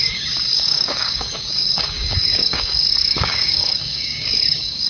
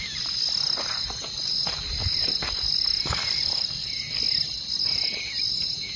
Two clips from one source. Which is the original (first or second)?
second